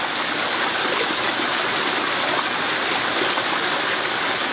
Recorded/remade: recorded